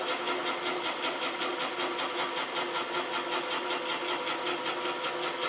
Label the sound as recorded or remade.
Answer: recorded